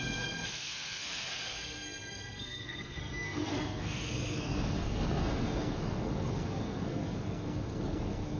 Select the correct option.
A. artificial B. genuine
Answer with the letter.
A